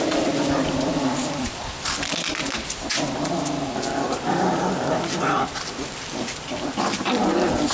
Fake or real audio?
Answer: real